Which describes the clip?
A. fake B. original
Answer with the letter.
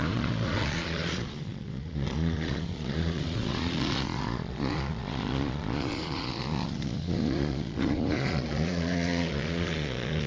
A